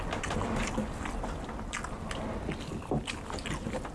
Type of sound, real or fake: real